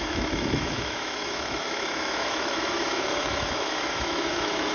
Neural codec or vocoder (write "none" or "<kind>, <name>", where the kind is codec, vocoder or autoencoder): autoencoder, DAC-VAE